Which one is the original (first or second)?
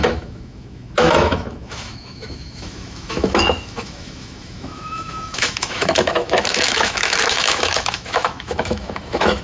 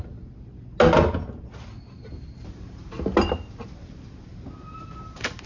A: second